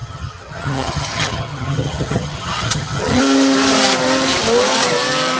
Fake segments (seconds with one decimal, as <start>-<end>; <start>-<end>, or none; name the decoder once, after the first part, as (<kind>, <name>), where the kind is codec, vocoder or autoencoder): 0.0-3.2 (vocoder, HiFi-GAN)